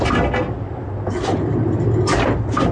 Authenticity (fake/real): real